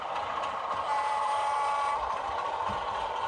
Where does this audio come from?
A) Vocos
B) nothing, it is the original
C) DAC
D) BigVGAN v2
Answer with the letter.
D